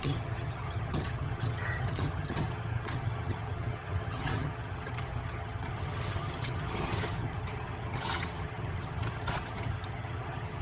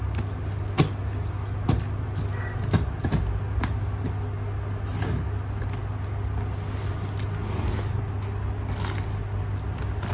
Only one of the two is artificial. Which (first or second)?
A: first